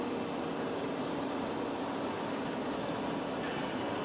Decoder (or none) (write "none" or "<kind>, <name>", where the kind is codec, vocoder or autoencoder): none